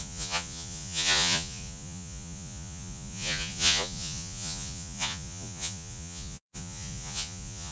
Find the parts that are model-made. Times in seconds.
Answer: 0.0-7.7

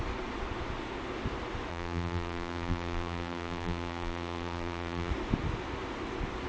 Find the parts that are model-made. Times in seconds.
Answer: 1.7-5.1